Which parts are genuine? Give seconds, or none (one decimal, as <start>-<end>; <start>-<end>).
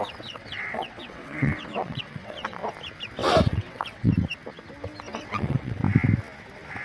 2.6-3.4; 4.1-5.2; 5.8-6.8